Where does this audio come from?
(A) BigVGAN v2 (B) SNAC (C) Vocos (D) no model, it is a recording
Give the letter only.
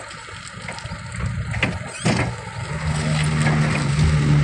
D